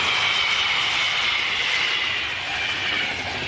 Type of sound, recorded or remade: recorded